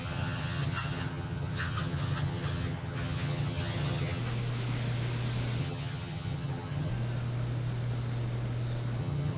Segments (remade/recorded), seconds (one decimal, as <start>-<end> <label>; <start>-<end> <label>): 0.0-4.2 remade; 4.2-5.6 recorded; 5.6-6.9 remade; 6.9-9.0 recorded; 9.0-9.4 remade